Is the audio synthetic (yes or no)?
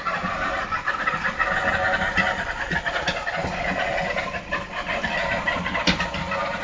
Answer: no